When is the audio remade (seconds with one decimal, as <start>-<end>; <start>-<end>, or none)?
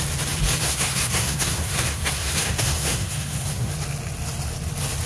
0.6-3.7